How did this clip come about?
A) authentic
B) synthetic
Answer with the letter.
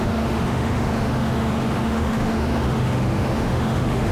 B